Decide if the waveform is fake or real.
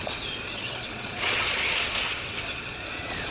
fake